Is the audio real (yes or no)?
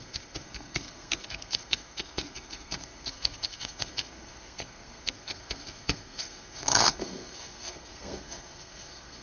no